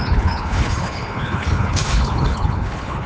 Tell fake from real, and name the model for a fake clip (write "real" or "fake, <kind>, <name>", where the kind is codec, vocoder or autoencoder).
fake, codec, HILCodec